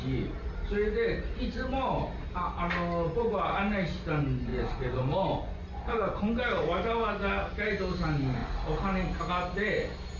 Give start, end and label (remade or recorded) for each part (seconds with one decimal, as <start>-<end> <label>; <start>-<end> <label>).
0.0-4.5 recorded; 4.5-6.3 remade; 6.3-10.2 recorded